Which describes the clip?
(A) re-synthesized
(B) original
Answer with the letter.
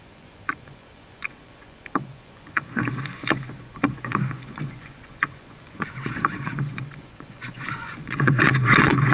A